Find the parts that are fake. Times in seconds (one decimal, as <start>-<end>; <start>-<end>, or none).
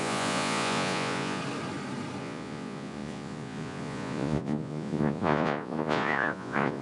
0.0-1.4; 2.2-6.8